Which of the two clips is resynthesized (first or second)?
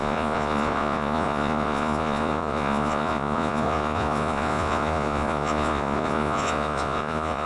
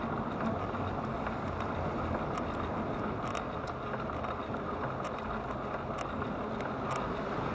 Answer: first